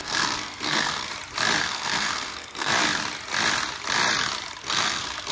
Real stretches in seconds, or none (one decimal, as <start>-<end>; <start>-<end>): 1.1-1.6; 2.7-4.6